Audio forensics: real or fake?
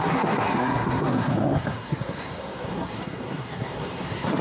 fake